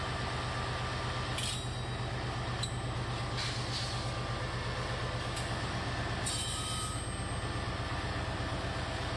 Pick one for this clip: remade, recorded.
recorded